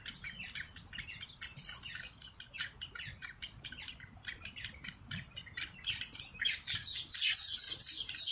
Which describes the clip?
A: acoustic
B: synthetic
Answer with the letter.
A